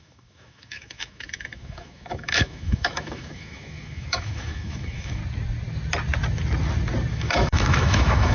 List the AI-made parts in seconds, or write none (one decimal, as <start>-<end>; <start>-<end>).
0.0-5.2; 7.1-8.3